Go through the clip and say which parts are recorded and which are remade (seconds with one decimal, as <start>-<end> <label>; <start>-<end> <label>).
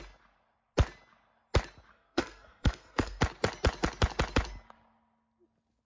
0.0-1.9 recorded; 1.9-3.2 remade; 3.2-5.9 recorded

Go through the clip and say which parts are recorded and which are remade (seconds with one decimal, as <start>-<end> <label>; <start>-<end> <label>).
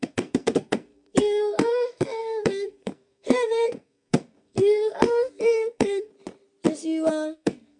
0.0-6.1 remade; 6.1-7.1 recorded; 7.1-7.8 remade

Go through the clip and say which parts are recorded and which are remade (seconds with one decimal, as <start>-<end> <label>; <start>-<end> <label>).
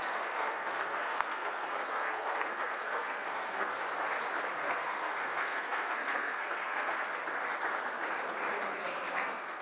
0.0-3.8 remade; 3.8-4.7 recorded; 4.7-6.9 remade; 6.9-9.1 recorded; 9.1-9.6 remade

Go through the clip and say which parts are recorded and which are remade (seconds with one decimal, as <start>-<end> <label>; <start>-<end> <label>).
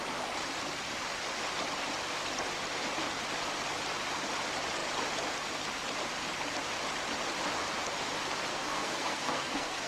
0.0-8.5 recorded; 8.5-9.9 remade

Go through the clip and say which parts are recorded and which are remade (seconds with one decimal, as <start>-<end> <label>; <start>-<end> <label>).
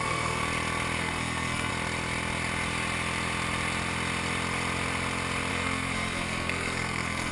0.0-0.4 remade; 0.4-1.0 recorded; 1.0-1.7 remade; 1.7-5.5 recorded; 5.5-7.3 remade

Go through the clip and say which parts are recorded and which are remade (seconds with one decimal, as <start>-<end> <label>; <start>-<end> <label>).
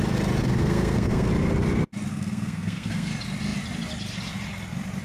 0.0-0.5 recorded; 0.5-1.3 remade; 1.3-2.1 recorded; 2.1-3.1 remade; 3.1-5.0 recorded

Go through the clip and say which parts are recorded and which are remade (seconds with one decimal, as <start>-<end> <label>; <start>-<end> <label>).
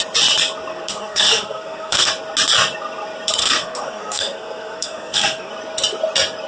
0.0-0.7 recorded; 0.7-2.1 remade; 2.1-3.4 recorded; 3.4-5.5 remade; 5.5-6.5 recorded